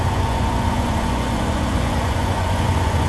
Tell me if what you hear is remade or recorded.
remade